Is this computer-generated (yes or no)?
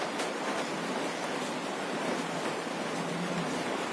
no